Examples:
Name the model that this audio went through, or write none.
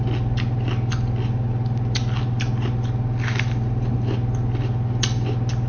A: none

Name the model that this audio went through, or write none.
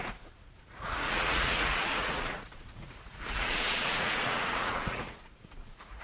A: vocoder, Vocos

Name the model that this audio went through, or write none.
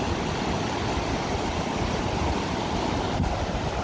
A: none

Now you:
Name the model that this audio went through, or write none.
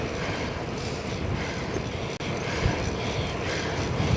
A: none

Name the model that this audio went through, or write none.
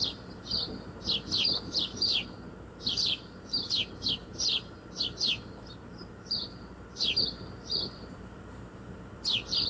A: vocoder, BigVGAN v2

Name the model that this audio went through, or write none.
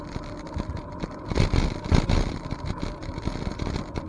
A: none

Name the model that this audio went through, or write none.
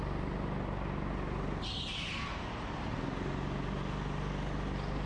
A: none